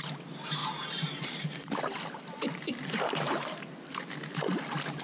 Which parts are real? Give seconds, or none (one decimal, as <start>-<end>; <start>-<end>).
0.0-0.6; 3.6-5.0